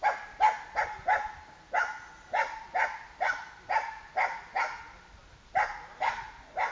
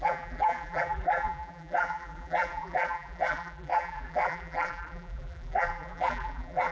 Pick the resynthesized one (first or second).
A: second